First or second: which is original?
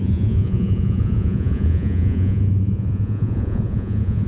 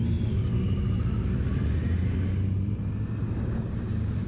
second